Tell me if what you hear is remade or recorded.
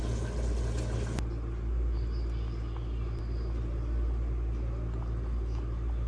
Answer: recorded